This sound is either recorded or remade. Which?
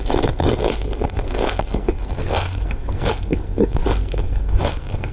remade